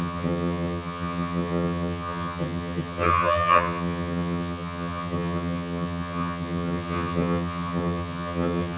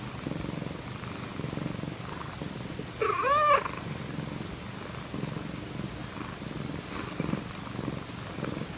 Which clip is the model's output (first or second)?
first